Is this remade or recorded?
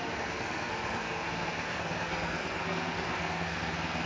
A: remade